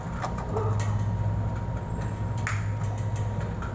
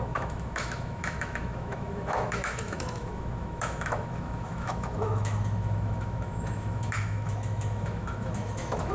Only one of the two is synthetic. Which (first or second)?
second